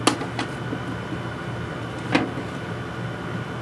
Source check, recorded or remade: recorded